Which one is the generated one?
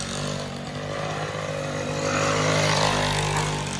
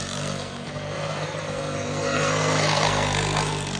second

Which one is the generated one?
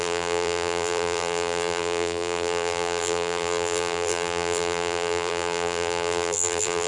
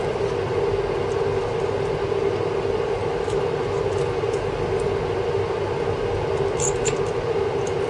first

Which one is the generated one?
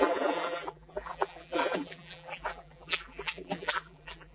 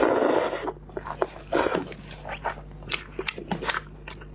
first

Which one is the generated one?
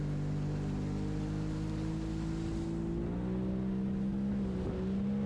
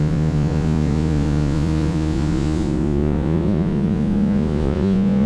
second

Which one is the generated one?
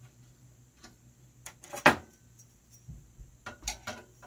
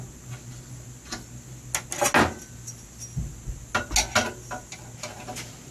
first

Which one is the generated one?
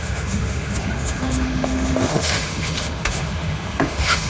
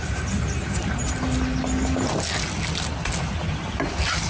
first